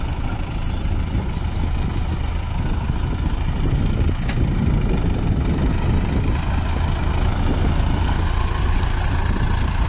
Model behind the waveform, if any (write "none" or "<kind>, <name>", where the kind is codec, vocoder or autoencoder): none